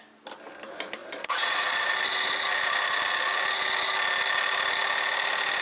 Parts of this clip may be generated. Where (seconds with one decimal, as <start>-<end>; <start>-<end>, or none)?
1.0-1.9